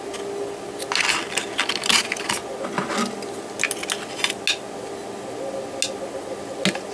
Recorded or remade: recorded